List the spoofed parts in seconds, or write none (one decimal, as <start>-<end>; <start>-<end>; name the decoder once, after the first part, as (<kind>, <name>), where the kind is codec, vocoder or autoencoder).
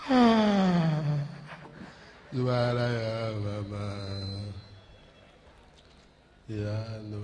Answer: 4.4-4.9 (vocoder, Vocos)